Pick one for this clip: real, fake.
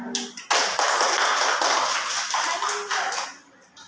real